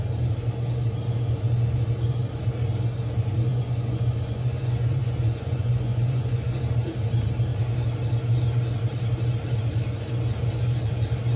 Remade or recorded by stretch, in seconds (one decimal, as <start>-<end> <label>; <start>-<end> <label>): 0.0-3.5 recorded; 3.5-6.6 remade; 6.6-11.4 recorded

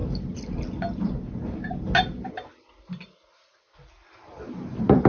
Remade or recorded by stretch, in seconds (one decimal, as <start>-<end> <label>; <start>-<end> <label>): 0.0-5.1 recorded

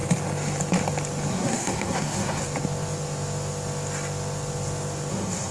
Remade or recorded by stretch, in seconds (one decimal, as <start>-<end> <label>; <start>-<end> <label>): 0.0-1.3 recorded; 1.3-2.4 remade; 2.4-5.1 recorded; 5.1-5.5 remade

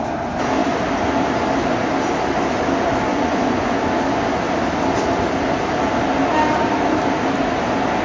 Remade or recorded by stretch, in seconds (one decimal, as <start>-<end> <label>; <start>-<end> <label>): 0.0-3.1 recorded; 3.1-3.8 remade; 3.8-8.0 recorded

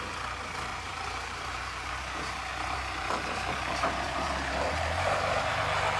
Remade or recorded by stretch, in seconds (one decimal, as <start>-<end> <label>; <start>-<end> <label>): 0.0-0.7 recorded; 0.7-1.9 remade; 1.9-2.5 recorded; 2.5-5.6 remade; 5.6-6.0 recorded

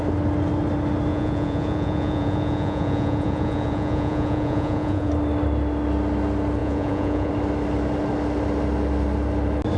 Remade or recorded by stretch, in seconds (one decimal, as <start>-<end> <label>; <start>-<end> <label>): 0.0-1.1 recorded; 1.1-5.1 remade; 5.1-6.6 recorded; 6.6-7.3 remade; 7.3-9.8 recorded

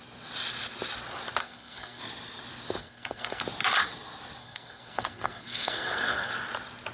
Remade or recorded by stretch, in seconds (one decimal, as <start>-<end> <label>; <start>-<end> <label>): 0.0-1.4 recorded; 1.4-2.0 remade; 2.0-2.8 recorded; 2.8-3.4 remade; 3.4-4.4 recorded; 4.4-6.3 remade; 6.3-6.9 recorded

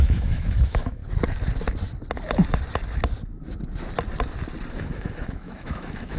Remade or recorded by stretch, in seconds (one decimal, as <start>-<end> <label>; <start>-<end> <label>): 0.0-1.0 remade; 1.0-4.7 recorded; 4.7-6.2 remade